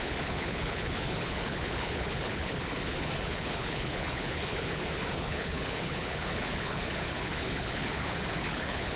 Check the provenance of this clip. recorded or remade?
remade